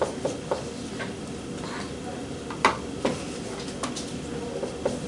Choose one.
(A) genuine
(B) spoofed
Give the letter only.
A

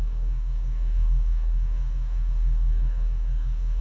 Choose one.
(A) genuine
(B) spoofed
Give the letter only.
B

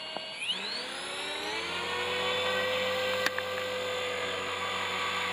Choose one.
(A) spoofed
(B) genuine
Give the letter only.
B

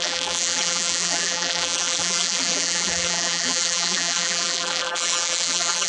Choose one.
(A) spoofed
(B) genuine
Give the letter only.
A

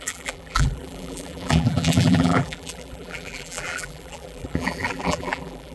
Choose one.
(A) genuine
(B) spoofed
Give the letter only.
B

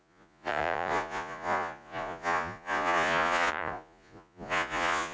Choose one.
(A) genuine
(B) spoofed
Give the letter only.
B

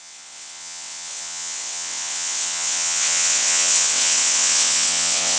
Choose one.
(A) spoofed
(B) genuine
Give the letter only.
A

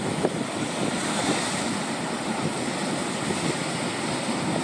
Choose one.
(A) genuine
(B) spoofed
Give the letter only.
A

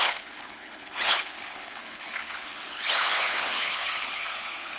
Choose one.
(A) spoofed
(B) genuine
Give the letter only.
A